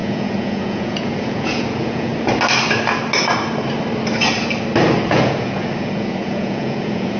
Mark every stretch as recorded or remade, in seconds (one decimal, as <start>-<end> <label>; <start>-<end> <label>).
0.0-2.1 remade; 2.1-5.1 recorded; 5.1-7.2 remade